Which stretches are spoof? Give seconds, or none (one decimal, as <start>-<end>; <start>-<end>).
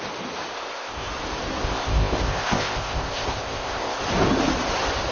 0.5-1.1; 1.6-4.0